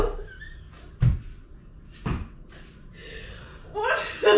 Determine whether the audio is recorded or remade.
recorded